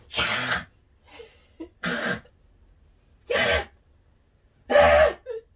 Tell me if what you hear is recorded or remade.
recorded